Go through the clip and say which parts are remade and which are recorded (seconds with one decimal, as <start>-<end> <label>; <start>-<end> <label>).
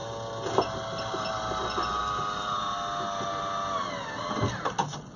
0.0-5.2 recorded